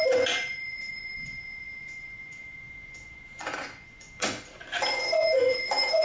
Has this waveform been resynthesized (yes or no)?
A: yes